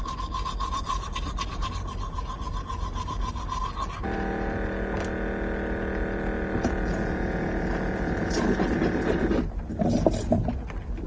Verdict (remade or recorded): recorded